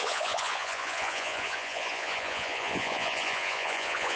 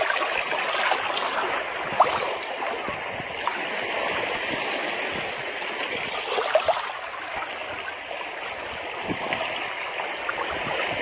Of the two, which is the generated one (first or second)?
first